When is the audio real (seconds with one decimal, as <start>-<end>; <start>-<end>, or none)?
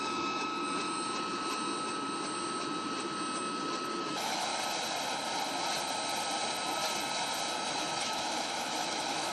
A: 0.5-4.0; 4.5-7.5